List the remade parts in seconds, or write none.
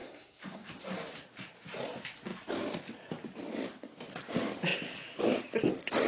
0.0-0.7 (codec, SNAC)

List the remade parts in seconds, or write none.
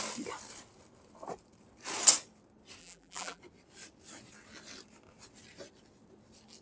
2.8-3.4 (vocoder, BigVGAN v2)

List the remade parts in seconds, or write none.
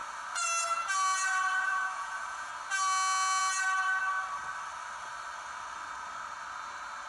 1.3-2.5 (vocoder, Vocos)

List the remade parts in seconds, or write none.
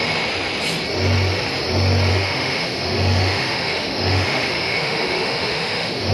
2.1-6.1 (autoencoder, DAC-VAE)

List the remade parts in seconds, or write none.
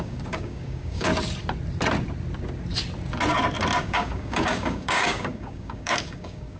0.0-1.1 (codec, DAC); 3.8-6.6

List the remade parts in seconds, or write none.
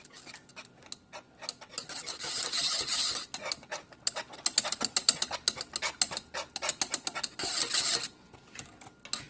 none